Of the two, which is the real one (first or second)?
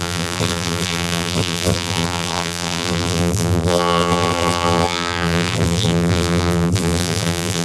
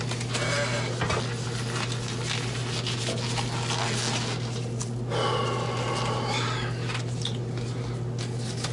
second